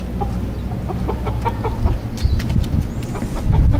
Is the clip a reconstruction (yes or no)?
no